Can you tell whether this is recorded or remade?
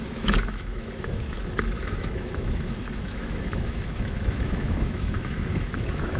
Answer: remade